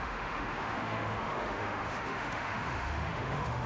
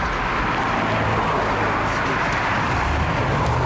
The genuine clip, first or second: second